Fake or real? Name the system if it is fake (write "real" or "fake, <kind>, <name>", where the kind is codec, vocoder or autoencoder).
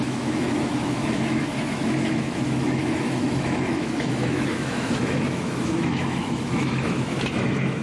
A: fake, autoencoder, DAC-VAE